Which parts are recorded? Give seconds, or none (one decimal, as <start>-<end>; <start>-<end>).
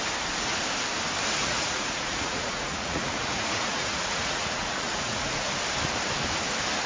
0.0-1.4; 5.5-6.9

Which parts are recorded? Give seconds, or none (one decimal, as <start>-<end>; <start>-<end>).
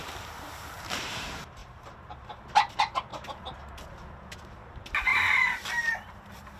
3.1-4.4; 5.1-6.1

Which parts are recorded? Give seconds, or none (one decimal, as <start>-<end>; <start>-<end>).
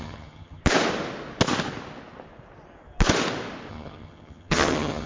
0.6-3.7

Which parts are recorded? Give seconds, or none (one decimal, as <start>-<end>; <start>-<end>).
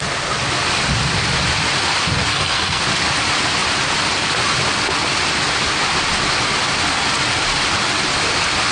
0.0-2.3; 2.8-8.7